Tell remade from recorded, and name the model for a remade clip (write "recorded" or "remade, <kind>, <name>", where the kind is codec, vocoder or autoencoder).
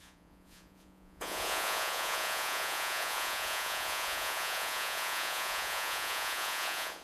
remade, vocoder, Vocos